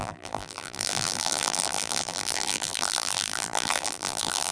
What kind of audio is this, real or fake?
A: fake